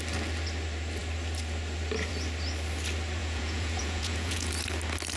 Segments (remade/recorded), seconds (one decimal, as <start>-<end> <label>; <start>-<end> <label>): 0.0-3.2 recorded; 3.2-4.5 remade; 4.5-5.2 recorded